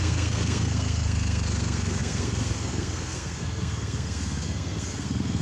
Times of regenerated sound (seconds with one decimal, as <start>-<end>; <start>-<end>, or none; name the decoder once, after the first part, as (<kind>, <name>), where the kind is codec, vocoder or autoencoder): 0.0-5.4 (codec, SNAC)